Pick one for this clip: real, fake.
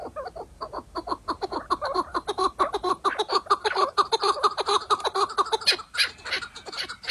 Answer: real